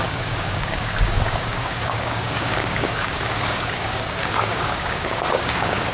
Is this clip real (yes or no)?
no